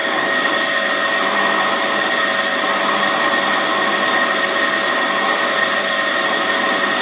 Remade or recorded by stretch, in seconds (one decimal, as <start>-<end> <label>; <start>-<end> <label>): 0.0-0.5 remade; 0.5-7.0 recorded